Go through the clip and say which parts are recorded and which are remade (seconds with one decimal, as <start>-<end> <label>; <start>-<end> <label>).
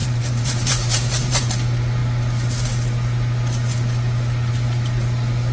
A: 0.0-1.4 remade; 1.4-5.5 recorded